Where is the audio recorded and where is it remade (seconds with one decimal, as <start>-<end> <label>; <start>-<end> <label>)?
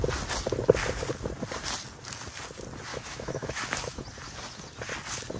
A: 0.0-2.9 recorded; 2.9-4.0 remade; 4.0-5.4 recorded